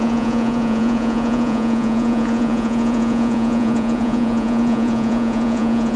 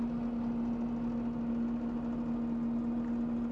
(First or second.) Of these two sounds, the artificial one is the first